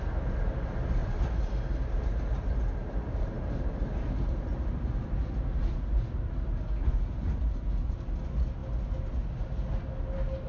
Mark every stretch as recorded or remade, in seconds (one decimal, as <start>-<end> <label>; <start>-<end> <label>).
0.0-1.0 recorded; 1.0-2.2 remade; 2.2-2.8 recorded; 2.8-7.9 remade; 7.9-10.5 recorded